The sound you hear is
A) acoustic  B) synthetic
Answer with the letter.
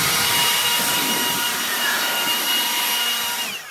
B